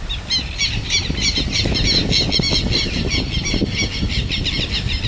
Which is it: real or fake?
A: real